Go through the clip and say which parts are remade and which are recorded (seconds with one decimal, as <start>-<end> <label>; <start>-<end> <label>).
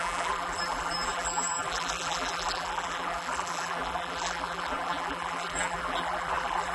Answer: 0.0-6.7 remade